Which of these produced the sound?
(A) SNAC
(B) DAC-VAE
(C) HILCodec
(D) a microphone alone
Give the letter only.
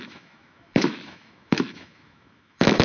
B